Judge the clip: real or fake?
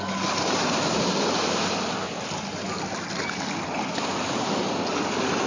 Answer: real